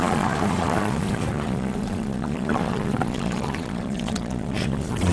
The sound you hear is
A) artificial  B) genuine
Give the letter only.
A